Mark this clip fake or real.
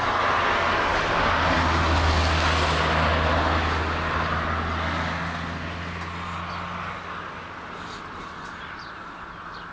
real